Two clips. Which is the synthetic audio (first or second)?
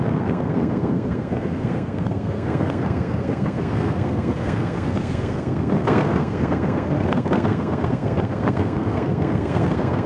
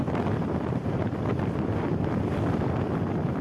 first